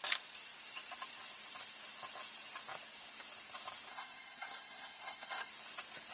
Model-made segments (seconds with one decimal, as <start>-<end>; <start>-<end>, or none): 3.9-5.5